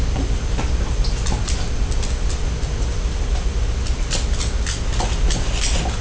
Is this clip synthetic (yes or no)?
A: no